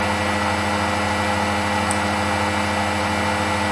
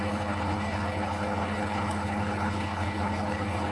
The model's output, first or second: second